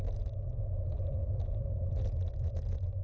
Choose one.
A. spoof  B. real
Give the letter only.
B